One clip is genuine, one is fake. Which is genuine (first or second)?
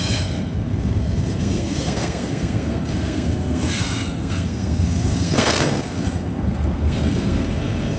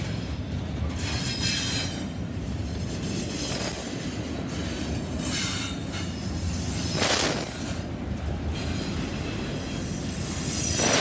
second